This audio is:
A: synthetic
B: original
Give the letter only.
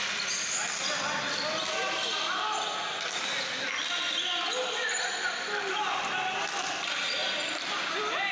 B